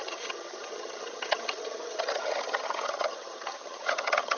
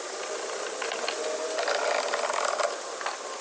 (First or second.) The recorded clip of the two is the second